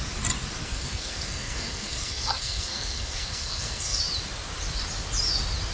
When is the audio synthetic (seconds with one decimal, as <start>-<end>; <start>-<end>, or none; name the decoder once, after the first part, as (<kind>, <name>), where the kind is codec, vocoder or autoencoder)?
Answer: 0.6-4.0 (codec, SNAC)